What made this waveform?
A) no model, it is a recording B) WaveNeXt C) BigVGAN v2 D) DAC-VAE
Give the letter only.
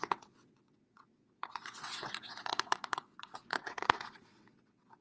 B